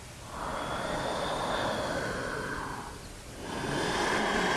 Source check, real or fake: real